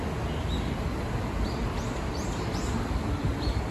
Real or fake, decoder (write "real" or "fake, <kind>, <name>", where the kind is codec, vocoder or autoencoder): real